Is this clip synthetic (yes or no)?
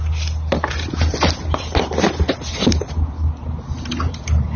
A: no